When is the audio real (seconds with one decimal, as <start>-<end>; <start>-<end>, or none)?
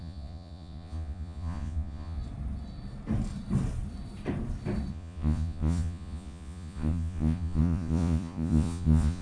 2.2-4.9